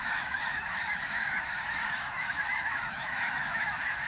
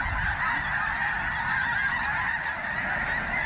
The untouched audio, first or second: second